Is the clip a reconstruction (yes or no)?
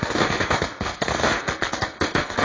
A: yes